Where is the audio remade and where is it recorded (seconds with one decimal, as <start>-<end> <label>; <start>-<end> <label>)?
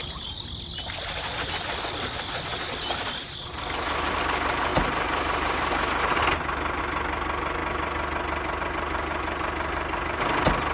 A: 0.0-10.7 recorded